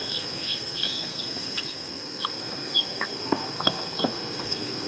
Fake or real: fake